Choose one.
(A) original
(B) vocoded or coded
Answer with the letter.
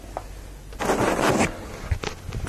A